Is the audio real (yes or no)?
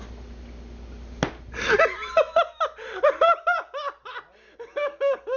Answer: yes